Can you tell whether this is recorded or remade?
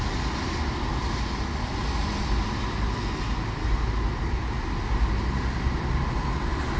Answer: recorded